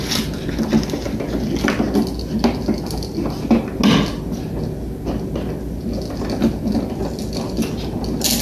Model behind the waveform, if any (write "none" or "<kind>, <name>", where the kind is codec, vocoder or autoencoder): none